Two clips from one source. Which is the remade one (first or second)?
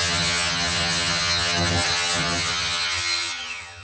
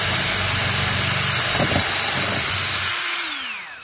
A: first